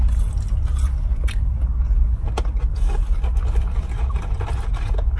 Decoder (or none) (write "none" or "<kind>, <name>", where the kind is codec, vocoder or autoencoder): none